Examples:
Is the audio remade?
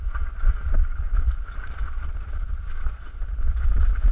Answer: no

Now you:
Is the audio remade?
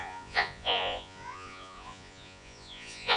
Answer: yes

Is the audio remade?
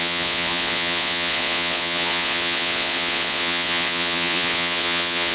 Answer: yes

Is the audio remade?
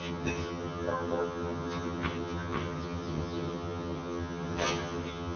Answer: yes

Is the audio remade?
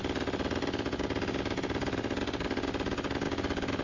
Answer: no